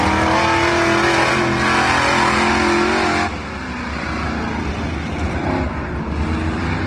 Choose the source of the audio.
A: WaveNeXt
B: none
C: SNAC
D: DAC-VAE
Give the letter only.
B